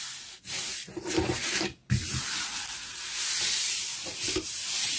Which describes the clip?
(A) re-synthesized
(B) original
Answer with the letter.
A